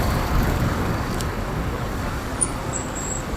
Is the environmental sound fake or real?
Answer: fake